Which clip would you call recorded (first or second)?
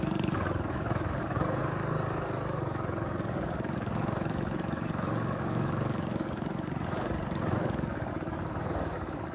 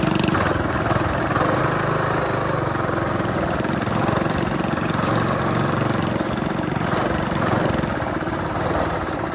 second